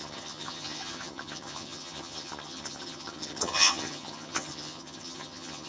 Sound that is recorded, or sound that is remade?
remade